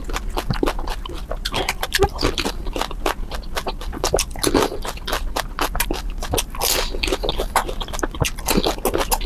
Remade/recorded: recorded